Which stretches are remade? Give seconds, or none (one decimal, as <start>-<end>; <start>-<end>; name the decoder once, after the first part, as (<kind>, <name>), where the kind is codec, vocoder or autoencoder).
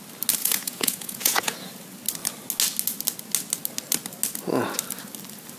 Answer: 0.4-1.7 (vocoder, Vocos)